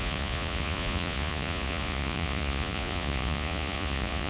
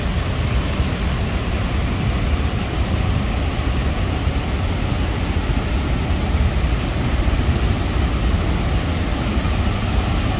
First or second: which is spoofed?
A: first